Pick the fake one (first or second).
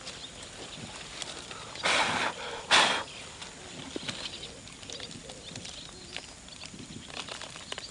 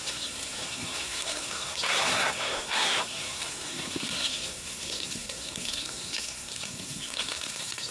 second